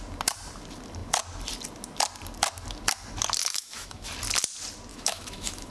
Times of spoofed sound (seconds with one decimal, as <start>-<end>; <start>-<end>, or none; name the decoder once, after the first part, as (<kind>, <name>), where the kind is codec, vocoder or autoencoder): 3.4-4.1 (autoencoder, DAC-VAE); 4.9-5.7